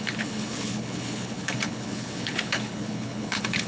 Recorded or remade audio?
remade